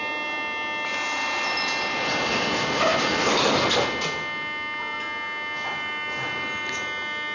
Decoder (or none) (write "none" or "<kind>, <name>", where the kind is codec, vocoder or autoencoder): none